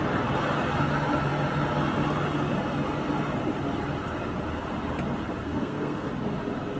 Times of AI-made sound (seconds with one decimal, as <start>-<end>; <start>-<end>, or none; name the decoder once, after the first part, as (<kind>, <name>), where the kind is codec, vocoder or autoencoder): 5.4-6.1 (codec, SNAC)

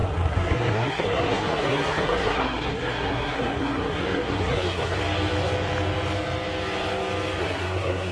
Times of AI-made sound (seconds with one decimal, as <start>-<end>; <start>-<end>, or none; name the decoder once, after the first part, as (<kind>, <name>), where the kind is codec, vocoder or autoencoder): 0.0-5.0 (codec, SNAC); 7.4-8.1

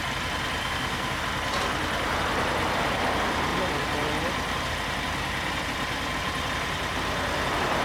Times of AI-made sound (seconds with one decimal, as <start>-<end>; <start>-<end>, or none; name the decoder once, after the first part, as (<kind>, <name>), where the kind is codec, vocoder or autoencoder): 0.6-1.2 (codec, SNAC)

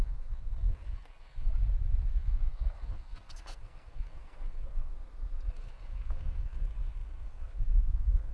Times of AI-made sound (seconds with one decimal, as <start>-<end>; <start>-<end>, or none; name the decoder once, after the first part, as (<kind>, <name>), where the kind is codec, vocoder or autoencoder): 0.0-1.5 (codec, SNAC); 2.1-4.9; 5.5-8.3